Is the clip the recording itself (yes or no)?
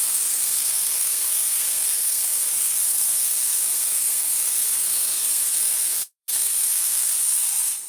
no